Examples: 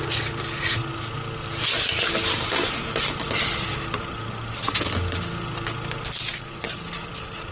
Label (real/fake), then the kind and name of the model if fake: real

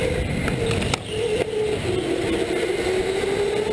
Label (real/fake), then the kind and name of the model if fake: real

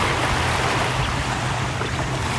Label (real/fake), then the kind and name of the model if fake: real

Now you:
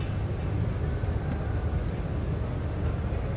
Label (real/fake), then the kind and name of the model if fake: real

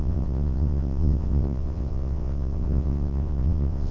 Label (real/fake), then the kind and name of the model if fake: fake, vocoder, WaveNeXt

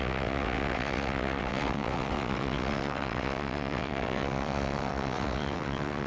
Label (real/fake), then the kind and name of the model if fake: fake, vocoder, WaveNeXt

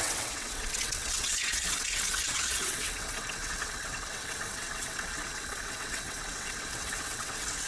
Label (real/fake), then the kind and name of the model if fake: fake, vocoder, WaveNeXt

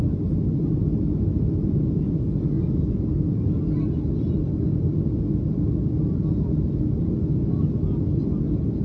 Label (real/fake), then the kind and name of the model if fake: real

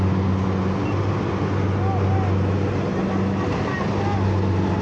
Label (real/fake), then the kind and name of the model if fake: real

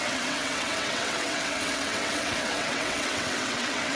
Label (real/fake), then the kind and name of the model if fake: fake, vocoder, WaveNeXt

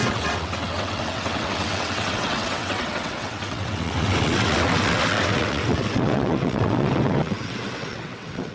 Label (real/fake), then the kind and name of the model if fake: fake, vocoder, WaveNeXt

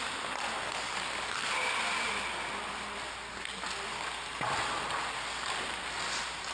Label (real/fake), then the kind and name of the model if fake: real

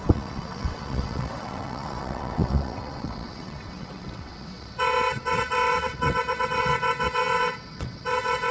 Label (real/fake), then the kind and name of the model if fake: fake, vocoder, WaveNeXt